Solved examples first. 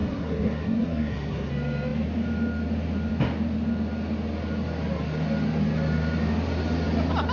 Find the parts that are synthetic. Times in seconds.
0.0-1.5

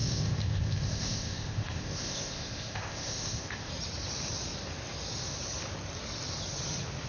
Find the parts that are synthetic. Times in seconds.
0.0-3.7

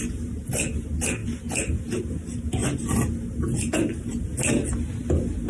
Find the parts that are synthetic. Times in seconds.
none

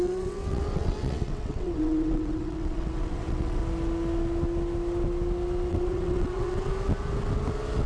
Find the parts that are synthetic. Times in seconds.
0.0-3.6; 5.7-6.7